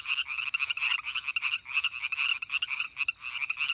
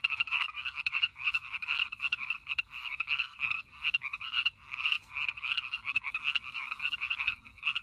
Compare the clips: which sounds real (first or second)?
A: first